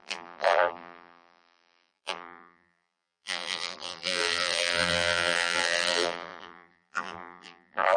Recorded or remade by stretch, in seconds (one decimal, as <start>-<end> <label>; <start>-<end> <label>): 0.0-8.0 remade